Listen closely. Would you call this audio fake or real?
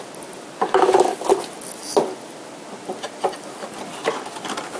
real